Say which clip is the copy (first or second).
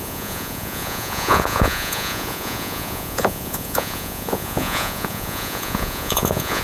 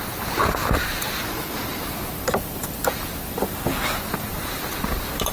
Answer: first